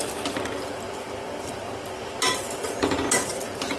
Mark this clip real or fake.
fake